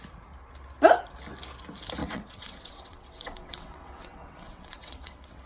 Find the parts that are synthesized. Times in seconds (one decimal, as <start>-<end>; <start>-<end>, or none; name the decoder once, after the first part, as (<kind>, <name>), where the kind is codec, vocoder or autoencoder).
2.0-5.5 (vocoder, WaveNeXt)